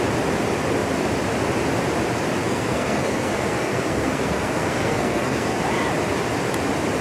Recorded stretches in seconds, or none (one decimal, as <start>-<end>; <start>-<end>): 0.0-2.4; 5.6-7.0